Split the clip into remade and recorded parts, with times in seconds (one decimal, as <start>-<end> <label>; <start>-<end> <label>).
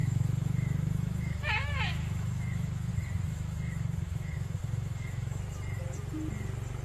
0.0-2.9 remade; 2.9-3.3 recorded; 3.3-5.4 remade; 5.4-6.8 recorded